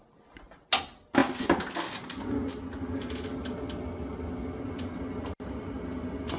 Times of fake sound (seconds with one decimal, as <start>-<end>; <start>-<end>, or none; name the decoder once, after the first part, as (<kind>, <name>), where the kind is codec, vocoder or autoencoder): none